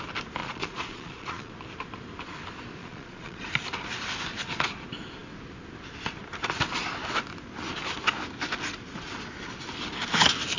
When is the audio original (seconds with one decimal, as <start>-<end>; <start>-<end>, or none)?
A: 0.0-0.4; 1.5-2.8; 3.5-10.6